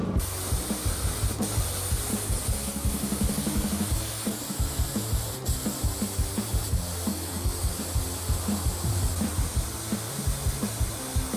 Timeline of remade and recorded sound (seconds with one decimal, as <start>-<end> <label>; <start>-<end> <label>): 0.0-2.1 recorded; 2.1-4.4 remade; 4.4-7.1 recorded; 7.1-7.8 remade; 7.8-11.4 recorded